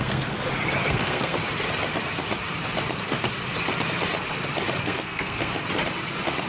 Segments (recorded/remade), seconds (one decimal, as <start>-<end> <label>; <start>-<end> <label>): 0.0-0.4 remade; 0.4-0.9 recorded; 0.9-1.4 remade; 1.4-4.8 recorded; 4.8-5.5 remade; 5.5-6.5 recorded